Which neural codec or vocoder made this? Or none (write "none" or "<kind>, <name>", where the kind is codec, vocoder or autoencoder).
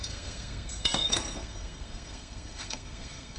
codec, SNAC